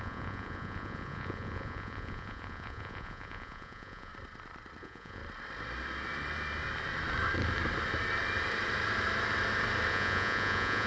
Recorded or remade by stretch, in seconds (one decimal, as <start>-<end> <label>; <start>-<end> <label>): 0.0-4.1 remade; 4.1-4.8 recorded; 4.8-5.2 remade; 5.2-9.9 recorded; 9.9-10.9 remade